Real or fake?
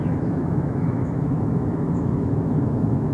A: fake